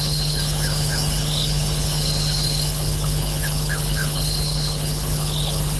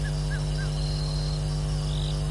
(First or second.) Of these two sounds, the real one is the second